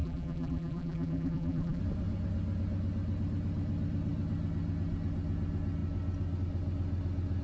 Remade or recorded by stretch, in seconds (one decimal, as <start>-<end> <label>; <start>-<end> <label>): 0.0-1.8 remade; 1.8-7.4 recorded